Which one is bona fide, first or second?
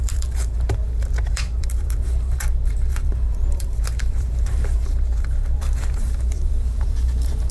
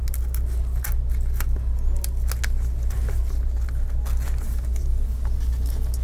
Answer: second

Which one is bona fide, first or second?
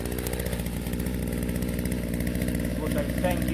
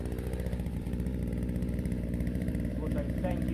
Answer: first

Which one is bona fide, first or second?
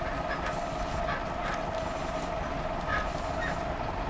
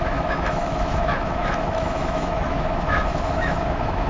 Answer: first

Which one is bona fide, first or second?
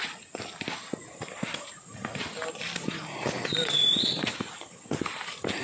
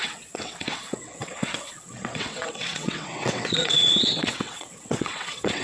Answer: first